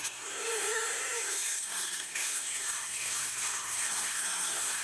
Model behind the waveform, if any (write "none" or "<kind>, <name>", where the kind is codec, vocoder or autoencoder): codec, SNAC